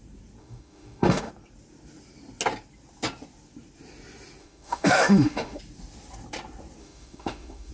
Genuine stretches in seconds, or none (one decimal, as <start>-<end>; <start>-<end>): 0.0-0.4; 1.3-4.4; 5.6-6.8